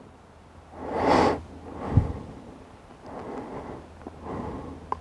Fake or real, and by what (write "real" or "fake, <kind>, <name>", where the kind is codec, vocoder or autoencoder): real